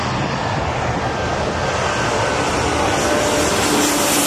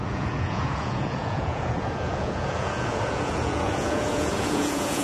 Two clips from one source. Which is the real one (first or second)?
first